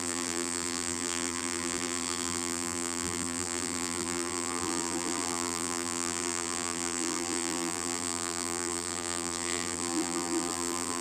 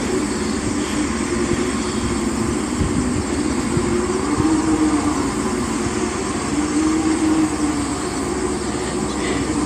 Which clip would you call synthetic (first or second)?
first